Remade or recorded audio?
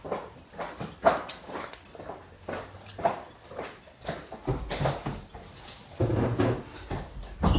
recorded